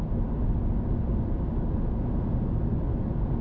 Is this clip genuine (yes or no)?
yes